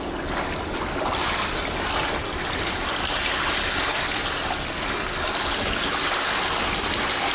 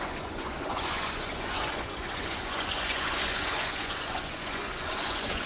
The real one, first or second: first